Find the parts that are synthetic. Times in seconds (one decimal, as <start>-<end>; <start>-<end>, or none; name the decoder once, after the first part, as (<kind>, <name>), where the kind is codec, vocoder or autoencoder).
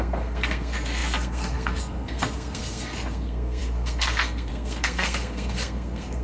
0.0-6.2 (codec, SNAC)